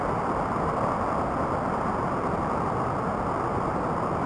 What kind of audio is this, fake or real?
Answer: real